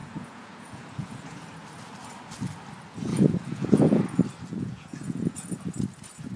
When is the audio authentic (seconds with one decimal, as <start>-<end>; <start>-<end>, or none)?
1.4-3.1; 4.0-4.5; 5.8-6.4